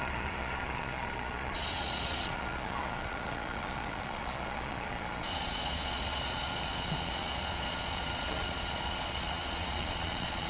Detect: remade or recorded remade